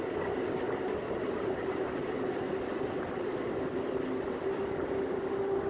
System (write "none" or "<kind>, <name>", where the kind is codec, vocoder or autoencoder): none